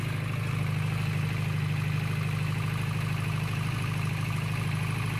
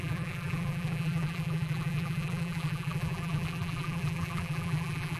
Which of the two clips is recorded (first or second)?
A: first